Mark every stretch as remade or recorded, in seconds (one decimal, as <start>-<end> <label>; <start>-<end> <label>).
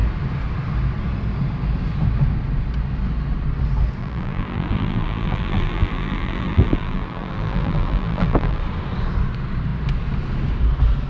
0.0-4.0 recorded; 4.0-8.6 remade; 8.6-11.1 recorded